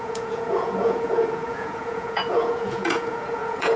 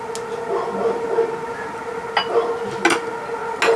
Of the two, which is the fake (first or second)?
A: first